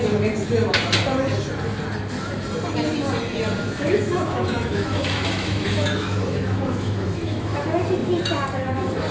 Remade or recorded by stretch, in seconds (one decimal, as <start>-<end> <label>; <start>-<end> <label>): 0.0-3.6 recorded; 3.6-7.6 remade; 7.6-9.1 recorded

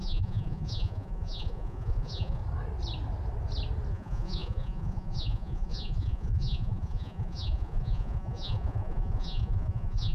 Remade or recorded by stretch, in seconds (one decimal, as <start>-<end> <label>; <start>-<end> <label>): 0.0-2.4 remade; 2.4-3.9 recorded; 3.9-10.1 remade

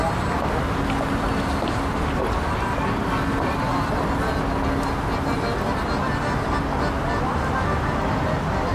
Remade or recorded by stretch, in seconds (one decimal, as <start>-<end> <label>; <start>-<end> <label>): 0.0-8.7 recorded

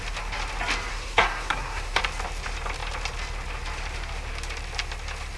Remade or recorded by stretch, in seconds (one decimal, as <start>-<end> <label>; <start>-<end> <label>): 0.0-0.9 recorded; 0.9-2.0 remade; 2.0-5.4 recorded

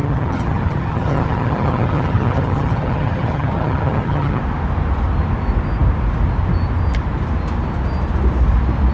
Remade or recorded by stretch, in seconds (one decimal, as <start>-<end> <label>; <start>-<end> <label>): 0.0-4.4 remade; 4.4-8.9 recorded